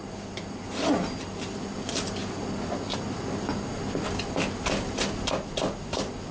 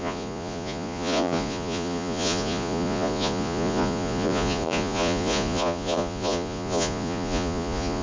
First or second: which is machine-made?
second